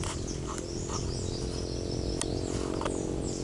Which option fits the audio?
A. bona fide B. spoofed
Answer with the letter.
A